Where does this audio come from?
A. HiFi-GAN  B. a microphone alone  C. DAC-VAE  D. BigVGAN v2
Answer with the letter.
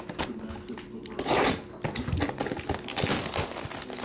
B